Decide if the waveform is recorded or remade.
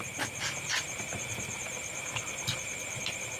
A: remade